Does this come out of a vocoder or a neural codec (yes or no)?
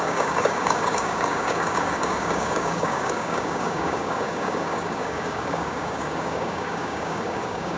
yes